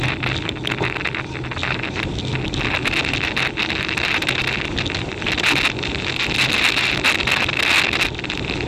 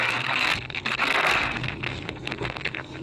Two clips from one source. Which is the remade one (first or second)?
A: second